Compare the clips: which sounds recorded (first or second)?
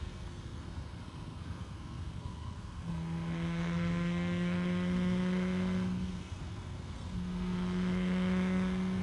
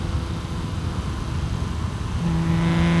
second